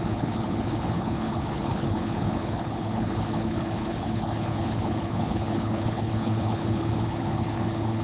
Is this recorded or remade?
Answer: remade